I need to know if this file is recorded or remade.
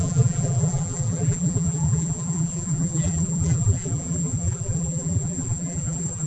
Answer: remade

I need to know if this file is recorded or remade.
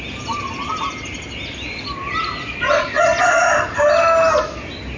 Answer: recorded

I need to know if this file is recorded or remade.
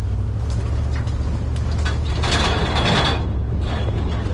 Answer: recorded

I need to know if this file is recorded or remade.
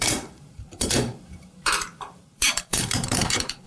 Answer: remade